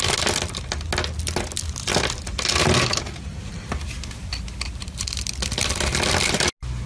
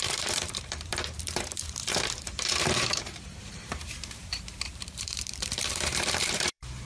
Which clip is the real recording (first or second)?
first